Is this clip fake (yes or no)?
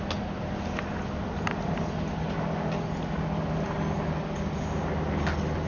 no